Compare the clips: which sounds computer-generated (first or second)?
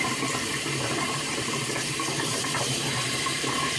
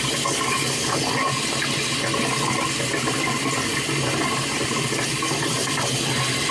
first